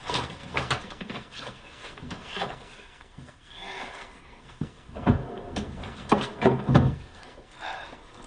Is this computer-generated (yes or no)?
yes